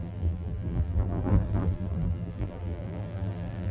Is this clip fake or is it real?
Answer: fake